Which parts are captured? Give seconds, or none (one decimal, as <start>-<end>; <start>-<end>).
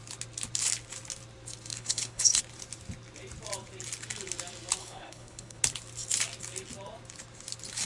0.0-1.7; 2.4-4.8; 5.6-7.9